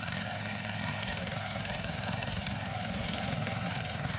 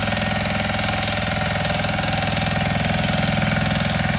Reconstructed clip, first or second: first